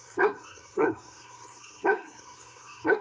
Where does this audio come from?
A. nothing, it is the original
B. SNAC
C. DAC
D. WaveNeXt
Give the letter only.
B